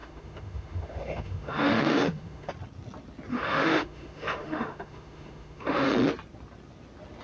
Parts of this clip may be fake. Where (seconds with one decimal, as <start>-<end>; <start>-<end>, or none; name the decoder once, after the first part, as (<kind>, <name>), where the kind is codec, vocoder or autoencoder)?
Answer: 0.0-2.5 (autoencoder, DAC-VAE); 3.3-5.9